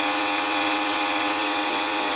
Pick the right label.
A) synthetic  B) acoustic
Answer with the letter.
A